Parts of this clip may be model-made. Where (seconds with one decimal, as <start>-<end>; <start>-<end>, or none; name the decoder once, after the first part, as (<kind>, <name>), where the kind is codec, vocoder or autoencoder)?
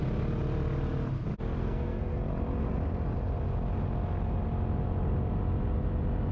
1.6-2.2 (codec, SNAC)